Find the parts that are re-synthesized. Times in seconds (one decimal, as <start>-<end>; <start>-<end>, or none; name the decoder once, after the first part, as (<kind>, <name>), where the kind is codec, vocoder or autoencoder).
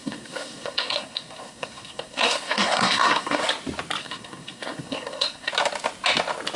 0.0-3.4 (codec, SNAC); 4.0-5.5